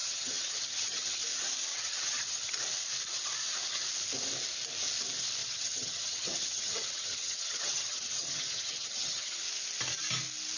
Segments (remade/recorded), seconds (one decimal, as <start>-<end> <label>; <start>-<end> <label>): 0.0-1.2 remade; 1.2-1.7 recorded; 1.7-2.5 remade; 2.5-5.4 recorded; 5.4-9.4 remade; 9.4-10.6 recorded